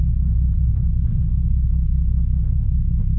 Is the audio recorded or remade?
recorded